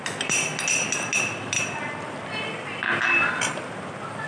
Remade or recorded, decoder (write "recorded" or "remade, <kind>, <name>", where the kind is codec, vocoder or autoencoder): recorded